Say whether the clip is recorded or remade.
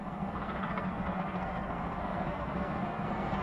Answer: remade